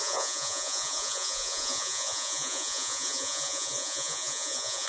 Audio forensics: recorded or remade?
remade